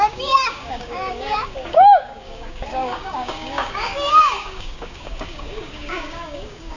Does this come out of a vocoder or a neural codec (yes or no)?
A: yes